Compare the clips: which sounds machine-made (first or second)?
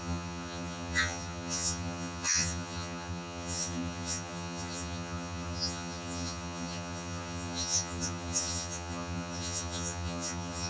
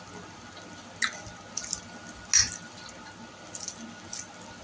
first